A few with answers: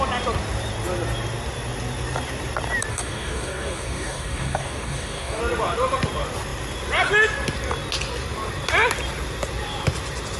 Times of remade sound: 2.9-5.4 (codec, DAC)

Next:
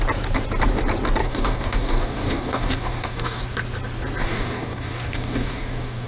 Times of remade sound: 1.2-3.4 (codec, DAC); 4.2-6.1

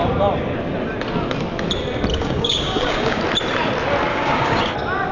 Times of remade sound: 2.1-3.2 (codec, DAC); 4.1-4.6

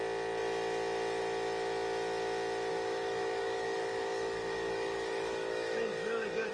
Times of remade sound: 2.7-6.5 (codec, DAC)

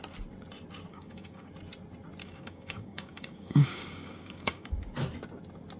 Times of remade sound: 0.9-1.5 (codec, DAC); 2.2-4.7

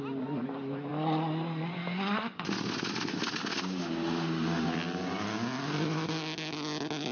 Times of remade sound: none

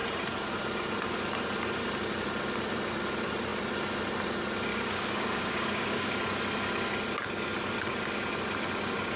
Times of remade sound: 4.7-6.2 (codec, DAC)

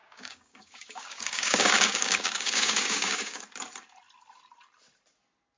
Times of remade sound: 0.0-3.4 (codec, DAC)